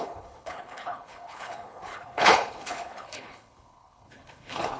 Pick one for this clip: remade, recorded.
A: remade